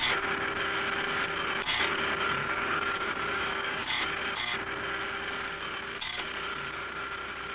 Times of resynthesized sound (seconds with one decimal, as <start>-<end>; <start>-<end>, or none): 2.4-3.9

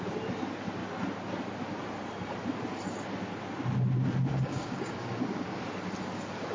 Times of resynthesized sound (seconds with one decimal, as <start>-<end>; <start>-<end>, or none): 4.3-5.6

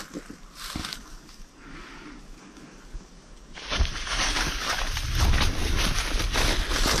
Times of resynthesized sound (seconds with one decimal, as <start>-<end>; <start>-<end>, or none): 0.8-4.8